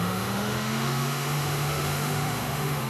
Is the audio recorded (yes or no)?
no